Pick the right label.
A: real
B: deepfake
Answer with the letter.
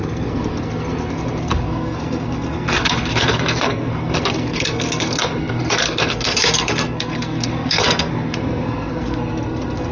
B